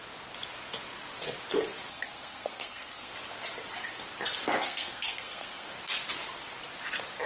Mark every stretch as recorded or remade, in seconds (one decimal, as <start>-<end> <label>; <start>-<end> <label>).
0.0-1.9 recorded; 1.9-3.1 remade; 3.1-4.6 recorded; 4.6-5.7 remade; 5.7-7.3 recorded